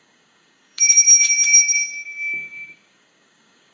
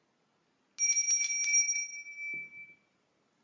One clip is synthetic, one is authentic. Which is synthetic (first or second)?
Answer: first